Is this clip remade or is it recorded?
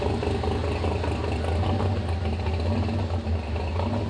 recorded